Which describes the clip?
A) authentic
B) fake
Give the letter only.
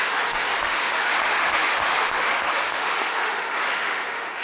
B